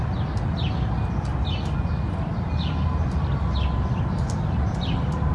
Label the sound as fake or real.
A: real